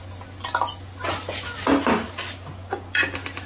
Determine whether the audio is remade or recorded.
recorded